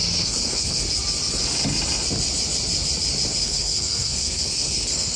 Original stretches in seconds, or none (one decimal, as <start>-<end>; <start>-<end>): 0.8-3.4